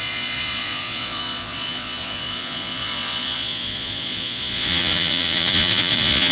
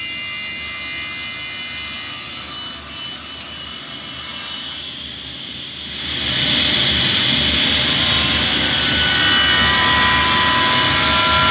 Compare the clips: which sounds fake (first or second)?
first